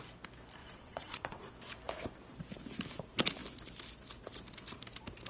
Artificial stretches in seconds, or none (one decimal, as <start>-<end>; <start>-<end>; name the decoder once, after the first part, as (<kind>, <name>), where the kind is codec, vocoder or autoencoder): 0.6-1.5 (vocoder, WaveNeXt)